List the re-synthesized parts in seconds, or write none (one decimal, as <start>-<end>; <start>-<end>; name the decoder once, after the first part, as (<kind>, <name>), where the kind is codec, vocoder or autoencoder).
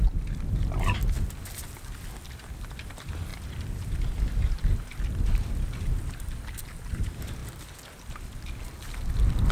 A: none